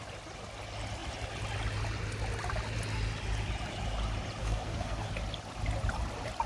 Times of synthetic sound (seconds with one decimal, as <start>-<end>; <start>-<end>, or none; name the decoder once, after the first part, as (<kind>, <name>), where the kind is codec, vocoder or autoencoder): 4.4-5.1 (codec, SNAC)